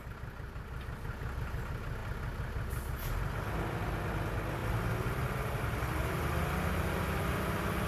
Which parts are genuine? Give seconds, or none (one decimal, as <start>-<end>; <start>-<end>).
0.0-4.6; 6.4-7.9